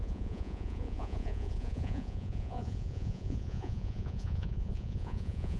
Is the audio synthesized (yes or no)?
yes